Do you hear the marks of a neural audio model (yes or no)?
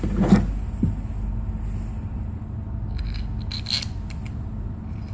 no